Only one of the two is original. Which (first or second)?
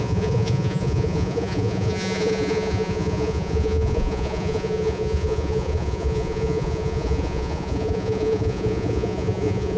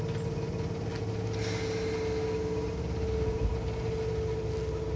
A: second